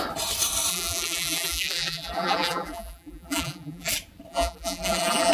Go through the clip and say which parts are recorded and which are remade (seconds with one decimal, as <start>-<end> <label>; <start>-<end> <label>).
0.0-0.7 recorded; 0.7-3.9 remade; 3.9-4.3 recorded; 4.3-5.3 remade